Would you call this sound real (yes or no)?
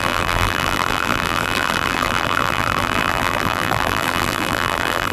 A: no